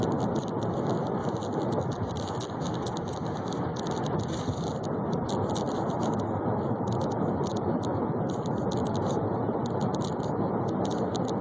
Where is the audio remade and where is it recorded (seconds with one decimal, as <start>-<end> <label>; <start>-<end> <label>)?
0.0-11.4 recorded